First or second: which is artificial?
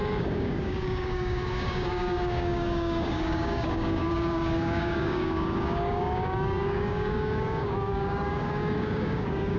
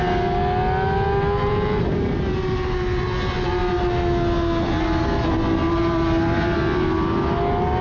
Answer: first